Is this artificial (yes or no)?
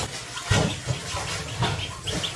no